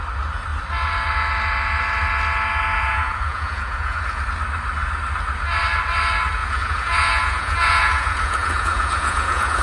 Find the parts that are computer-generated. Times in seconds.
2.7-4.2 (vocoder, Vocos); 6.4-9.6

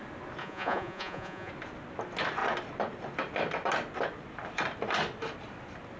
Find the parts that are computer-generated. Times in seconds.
0.4-1.5 (vocoder, Vocos)

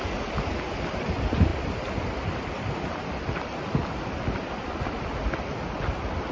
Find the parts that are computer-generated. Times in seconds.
none

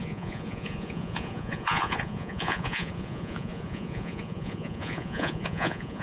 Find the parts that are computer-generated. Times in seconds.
0.0-6.0 (vocoder, Vocos)

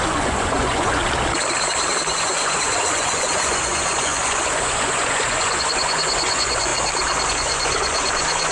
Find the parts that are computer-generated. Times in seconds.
0.0-1.0 (vocoder, Vocos); 2.1-6.7; 7.3-8.5